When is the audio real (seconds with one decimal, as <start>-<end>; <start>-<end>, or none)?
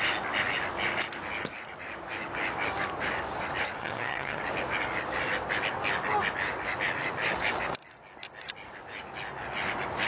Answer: 0.0-3.8; 4.4-10.1